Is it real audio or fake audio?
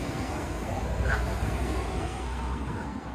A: fake